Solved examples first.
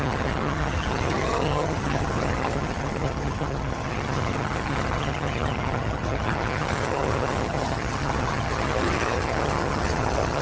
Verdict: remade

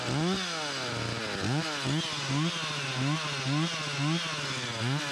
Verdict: recorded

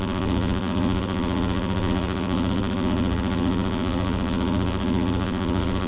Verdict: remade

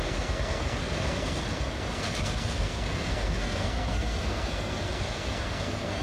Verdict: remade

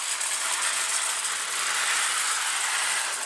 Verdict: recorded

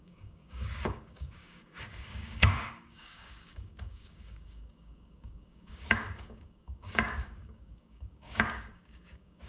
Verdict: remade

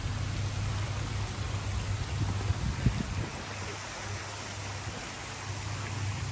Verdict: recorded